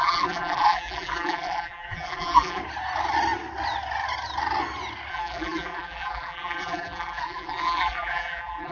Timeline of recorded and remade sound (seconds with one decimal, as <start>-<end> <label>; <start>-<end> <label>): 0.0-2.6 remade; 2.6-5.1 recorded; 5.1-8.7 remade